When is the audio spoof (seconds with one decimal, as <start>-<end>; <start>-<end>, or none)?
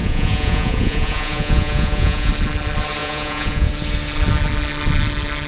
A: 0.0-2.3; 3.0-3.7